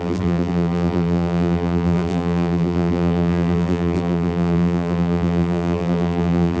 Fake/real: fake